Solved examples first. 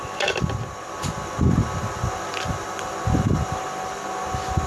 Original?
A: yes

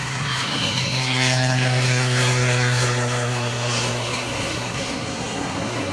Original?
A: no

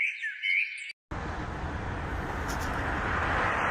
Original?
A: yes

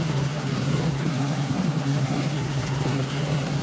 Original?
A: no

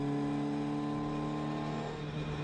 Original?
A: yes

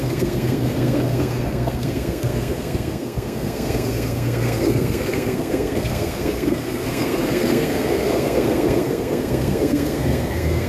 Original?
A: no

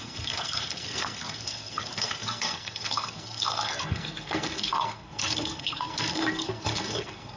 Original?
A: no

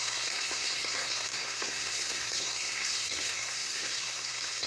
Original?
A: no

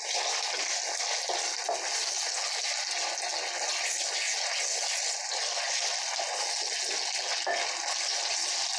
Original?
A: yes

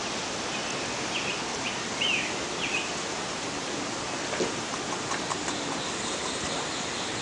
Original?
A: yes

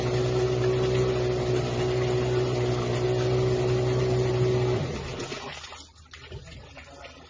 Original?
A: yes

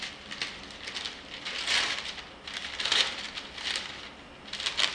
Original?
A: yes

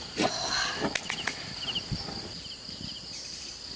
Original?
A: yes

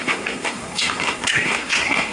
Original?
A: no